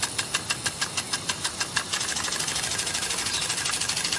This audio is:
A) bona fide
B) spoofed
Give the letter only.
A